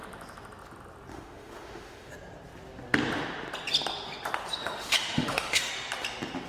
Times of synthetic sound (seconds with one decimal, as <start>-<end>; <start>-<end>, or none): 1.1-2.1; 4.6-5.7